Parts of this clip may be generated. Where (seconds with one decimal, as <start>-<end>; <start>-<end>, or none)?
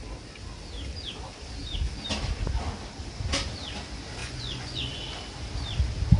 4.2-4.9